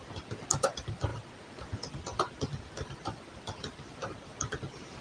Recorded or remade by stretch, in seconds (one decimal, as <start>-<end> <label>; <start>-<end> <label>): 0.0-5.0 recorded